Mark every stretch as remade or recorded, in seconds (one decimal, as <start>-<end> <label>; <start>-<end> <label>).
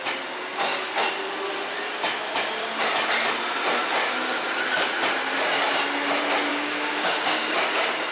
0.0-6.5 recorded; 6.5-7.5 remade; 7.5-8.1 recorded